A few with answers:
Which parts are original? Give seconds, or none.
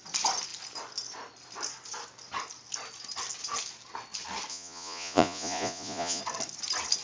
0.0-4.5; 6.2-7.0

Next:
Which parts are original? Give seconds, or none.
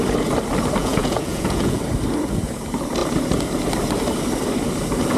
0.0-0.8; 1.8-5.2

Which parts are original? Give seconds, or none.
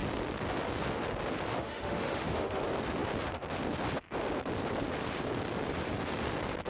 0.0-1.5; 2.6-6.7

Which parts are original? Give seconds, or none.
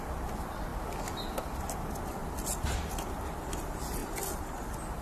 0.0-5.0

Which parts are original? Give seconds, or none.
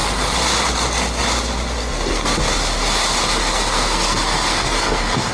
0.0-1.8; 2.4-3.4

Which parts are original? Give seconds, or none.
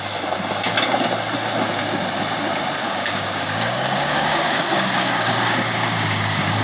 0.0-2.8